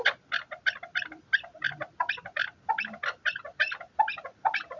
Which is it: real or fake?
real